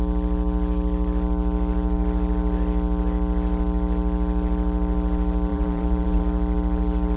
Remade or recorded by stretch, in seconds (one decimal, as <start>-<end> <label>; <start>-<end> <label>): 0.0-5.5 recorded; 5.5-6.2 remade; 6.2-7.2 recorded